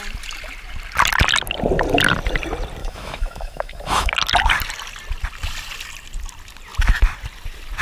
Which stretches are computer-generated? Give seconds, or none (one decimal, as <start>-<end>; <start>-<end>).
2.8-4.1